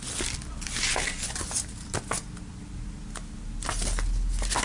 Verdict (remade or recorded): recorded